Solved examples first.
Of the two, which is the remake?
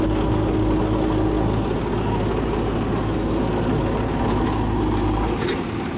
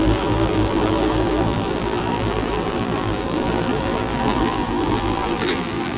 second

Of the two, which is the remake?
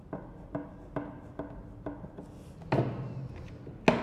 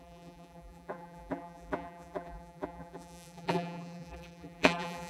second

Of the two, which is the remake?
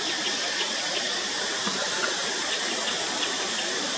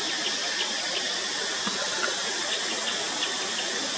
first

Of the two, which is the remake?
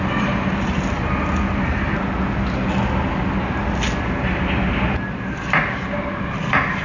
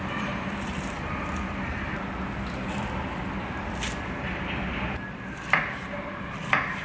second